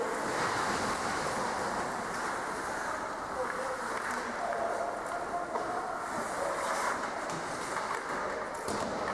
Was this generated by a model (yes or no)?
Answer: no